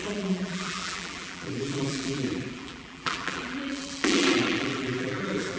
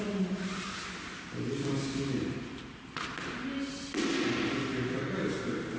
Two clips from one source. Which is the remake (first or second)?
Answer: first